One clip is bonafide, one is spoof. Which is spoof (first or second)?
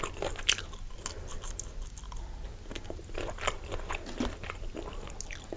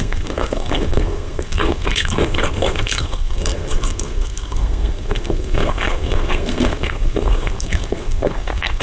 second